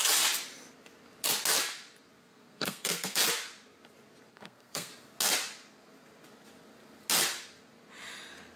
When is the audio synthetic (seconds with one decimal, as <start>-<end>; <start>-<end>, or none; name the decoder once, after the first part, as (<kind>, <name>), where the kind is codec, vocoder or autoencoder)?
2.2-3.2 (codec, SNAC); 4.3-4.9